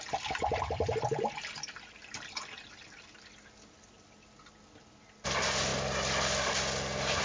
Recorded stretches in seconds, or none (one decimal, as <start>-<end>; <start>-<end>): 0.0-7.2